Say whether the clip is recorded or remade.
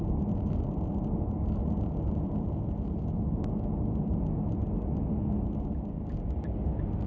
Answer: recorded